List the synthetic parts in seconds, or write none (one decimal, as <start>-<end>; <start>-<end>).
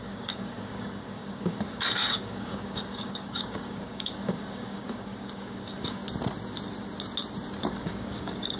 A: 0.0-6.0; 7.6-8.6